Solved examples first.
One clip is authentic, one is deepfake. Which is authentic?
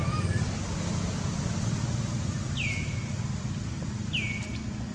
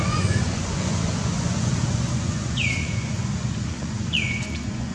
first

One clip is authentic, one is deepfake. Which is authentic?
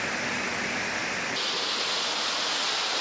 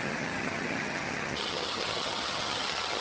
first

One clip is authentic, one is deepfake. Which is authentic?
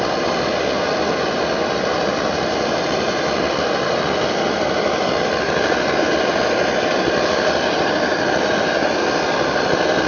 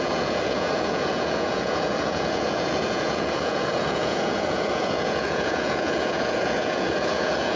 first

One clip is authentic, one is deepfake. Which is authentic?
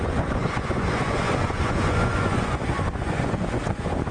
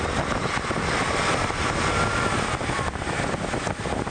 second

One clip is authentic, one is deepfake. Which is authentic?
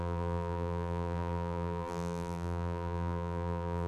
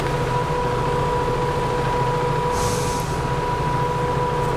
second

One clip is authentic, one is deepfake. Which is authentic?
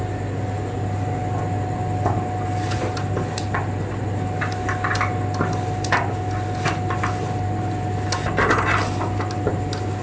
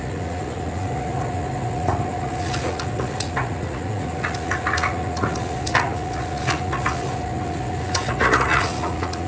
first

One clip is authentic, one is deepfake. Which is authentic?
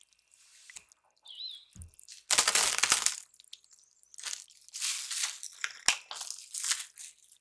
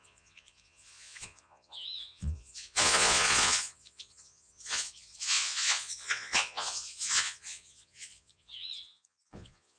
first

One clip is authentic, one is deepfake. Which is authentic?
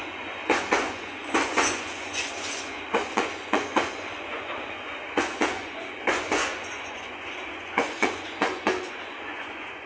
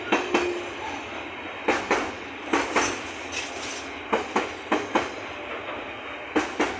second